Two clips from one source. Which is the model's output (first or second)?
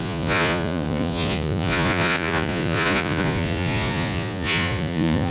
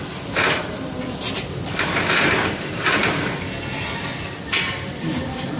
first